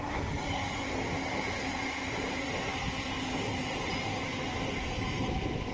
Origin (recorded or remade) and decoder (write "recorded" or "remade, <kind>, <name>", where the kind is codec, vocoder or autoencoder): recorded